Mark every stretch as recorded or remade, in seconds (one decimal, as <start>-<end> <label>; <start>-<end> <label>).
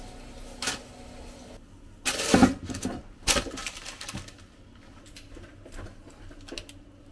0.0-3.6 recorded; 3.6-4.1 remade; 4.1-7.1 recorded